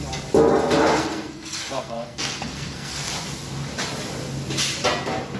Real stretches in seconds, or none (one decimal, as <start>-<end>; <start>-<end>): 0.0-0.9; 3.1-5.4